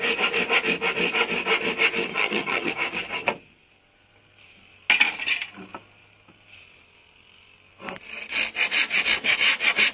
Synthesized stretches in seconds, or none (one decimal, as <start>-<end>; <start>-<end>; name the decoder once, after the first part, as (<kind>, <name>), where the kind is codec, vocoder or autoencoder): 2.1-2.7 (vocoder, HiFi-GAN)